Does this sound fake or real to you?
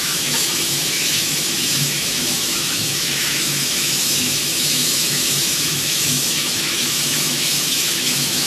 fake